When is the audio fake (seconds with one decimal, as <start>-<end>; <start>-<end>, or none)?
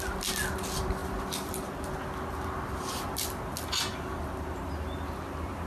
none